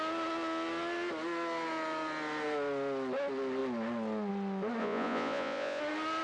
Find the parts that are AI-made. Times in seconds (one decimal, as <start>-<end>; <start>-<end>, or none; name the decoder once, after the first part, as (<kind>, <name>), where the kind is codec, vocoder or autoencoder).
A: 4.8-5.8 (vocoder, Vocos)